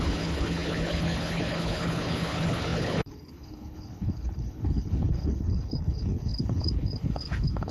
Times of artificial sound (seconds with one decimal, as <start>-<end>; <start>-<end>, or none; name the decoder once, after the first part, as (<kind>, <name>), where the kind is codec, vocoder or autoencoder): 0.0-7.7 (codec, HILCodec)